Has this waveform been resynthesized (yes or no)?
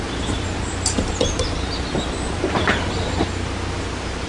no